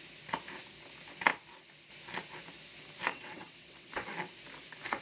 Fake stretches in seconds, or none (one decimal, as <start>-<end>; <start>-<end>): 3.1-3.9